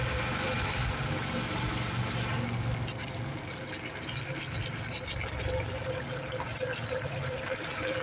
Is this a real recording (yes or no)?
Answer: yes